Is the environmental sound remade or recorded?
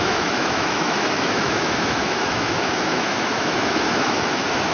remade